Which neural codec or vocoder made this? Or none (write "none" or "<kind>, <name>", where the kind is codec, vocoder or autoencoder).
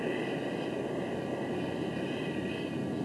none